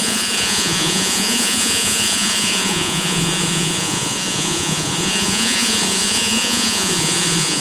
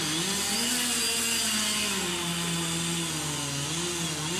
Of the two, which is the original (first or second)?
second